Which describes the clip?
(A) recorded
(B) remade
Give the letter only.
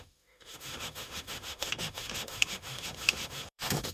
B